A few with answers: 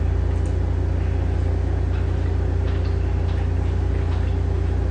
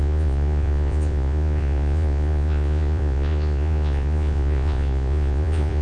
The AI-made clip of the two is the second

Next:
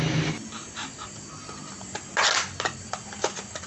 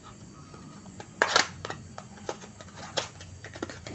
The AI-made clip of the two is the second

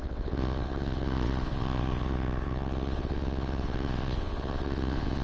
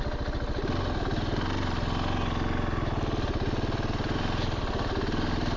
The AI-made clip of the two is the first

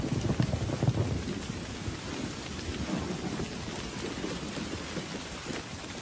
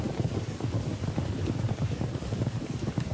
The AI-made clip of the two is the second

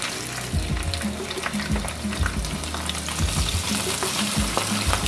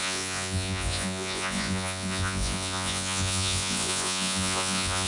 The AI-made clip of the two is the second